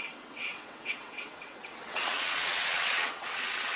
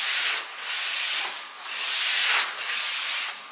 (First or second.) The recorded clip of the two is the second